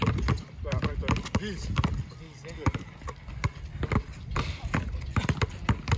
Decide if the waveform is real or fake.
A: real